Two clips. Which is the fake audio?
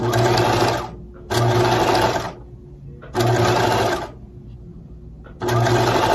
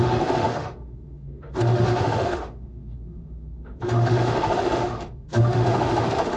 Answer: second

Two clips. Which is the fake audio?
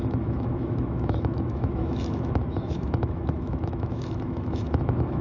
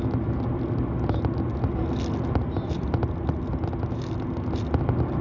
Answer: first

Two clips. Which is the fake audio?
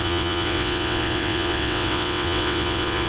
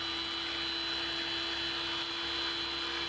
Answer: first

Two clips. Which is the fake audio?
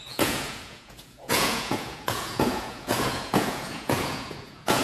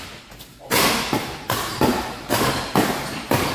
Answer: first